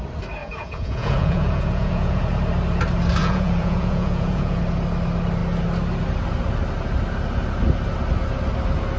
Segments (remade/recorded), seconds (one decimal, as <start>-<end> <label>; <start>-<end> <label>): 0.0-0.4 recorded; 0.4-2.2 remade; 2.2-3.2 recorded; 3.2-4.6 remade; 4.6-9.0 recorded